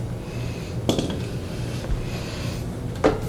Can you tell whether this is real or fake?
real